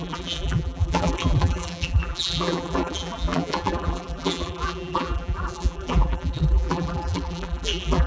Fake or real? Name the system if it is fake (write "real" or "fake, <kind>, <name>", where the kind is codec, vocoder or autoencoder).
fake, vocoder, BigVGAN v2